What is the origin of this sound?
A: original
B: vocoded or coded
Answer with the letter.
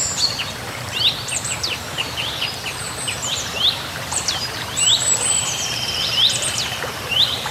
B